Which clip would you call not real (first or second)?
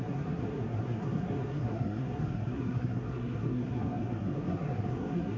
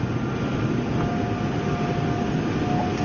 first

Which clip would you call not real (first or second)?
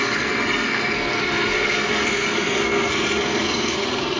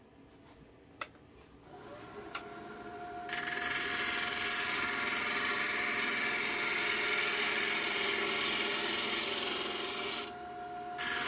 first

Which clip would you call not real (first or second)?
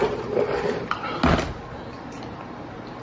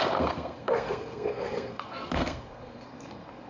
second